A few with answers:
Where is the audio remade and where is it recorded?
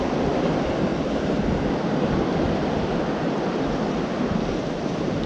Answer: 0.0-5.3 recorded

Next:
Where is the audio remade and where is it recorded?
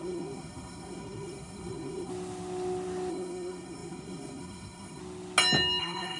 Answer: 0.0-2.1 remade; 2.1-3.1 recorded; 3.1-5.0 remade; 5.0-5.8 recorded; 5.8-6.2 remade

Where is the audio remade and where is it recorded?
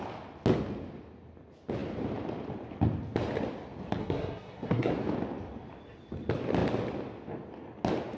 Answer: 0.0-4.0 recorded; 4.0-4.9 remade; 4.9-8.2 recorded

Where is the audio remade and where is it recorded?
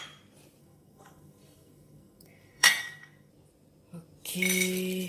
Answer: 0.0-0.6 recorded; 0.6-3.3 remade; 3.3-5.1 recorded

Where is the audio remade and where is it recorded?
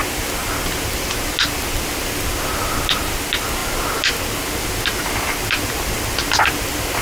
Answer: 0.0-7.0 recorded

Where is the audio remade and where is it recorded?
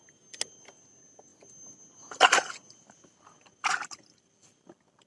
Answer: 0.0-5.1 recorded